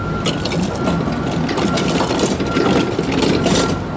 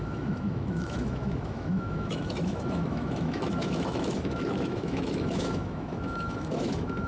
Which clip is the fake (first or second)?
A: second